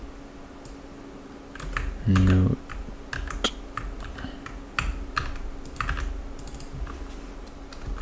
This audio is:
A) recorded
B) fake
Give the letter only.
A